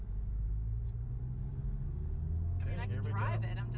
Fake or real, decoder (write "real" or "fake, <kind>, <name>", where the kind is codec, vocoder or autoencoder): real